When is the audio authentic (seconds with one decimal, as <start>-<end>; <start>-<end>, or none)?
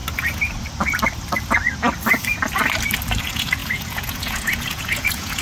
0.0-3.2